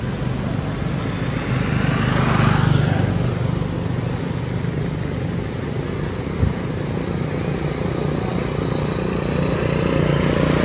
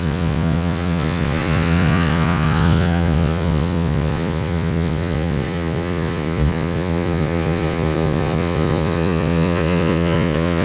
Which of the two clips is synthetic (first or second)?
second